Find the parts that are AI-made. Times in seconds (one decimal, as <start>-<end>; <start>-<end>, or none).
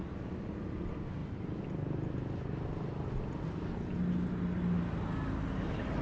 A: none